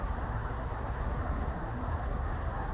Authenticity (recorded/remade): remade